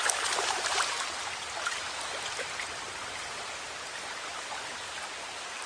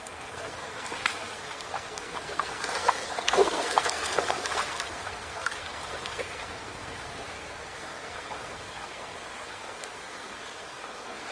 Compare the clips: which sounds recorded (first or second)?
first